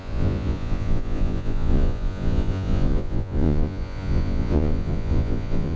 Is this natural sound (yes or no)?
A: no